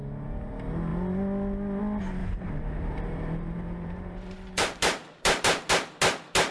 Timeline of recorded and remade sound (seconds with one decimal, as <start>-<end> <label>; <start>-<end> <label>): 0.0-2.2 recorded; 2.2-5.7 remade; 5.7-6.5 recorded